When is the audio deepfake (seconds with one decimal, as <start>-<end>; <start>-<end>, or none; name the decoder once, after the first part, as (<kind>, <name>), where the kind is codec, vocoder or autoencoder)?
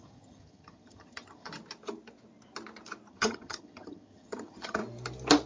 0.0-1.5 (vocoder, HiFi-GAN); 3.1-4.8